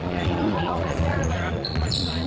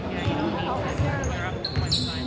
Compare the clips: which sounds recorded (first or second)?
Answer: second